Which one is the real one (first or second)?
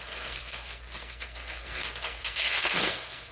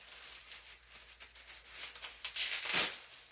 second